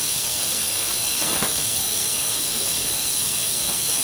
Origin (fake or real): fake